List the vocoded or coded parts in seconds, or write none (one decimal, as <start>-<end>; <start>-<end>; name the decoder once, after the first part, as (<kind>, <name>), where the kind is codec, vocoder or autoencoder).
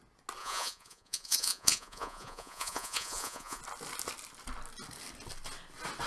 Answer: 0.4-3.6 (vocoder, Vocos)